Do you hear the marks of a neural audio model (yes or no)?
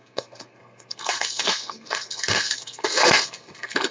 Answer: yes